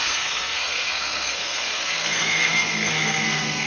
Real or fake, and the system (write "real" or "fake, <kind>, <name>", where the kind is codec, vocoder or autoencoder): fake, codec, SNAC